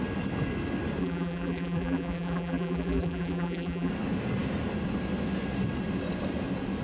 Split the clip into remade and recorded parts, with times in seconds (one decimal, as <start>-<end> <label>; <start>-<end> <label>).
0.0-1.0 recorded; 1.0-3.9 remade; 3.9-6.8 recorded